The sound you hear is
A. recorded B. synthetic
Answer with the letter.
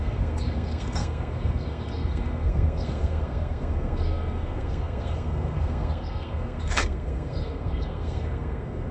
B